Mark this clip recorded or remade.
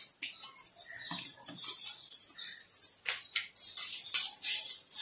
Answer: recorded